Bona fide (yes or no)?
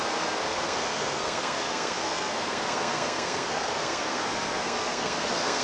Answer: no